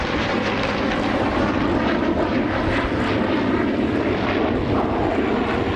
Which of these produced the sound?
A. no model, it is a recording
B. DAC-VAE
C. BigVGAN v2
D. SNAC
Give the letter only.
A